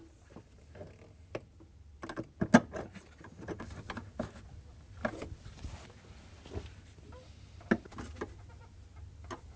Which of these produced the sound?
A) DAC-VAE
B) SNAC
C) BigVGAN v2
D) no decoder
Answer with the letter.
D